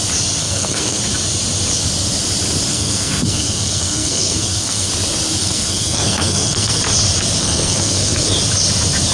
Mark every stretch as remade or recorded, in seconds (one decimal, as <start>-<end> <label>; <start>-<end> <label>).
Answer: 0.0-0.4 recorded; 0.4-1.0 remade; 1.0-2.7 recorded; 2.7-4.9 remade; 4.9-5.4 recorded; 5.4-6.8 remade; 6.8-7.4 recorded; 7.4-8.3 remade; 8.3-9.1 recorded